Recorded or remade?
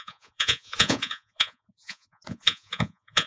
remade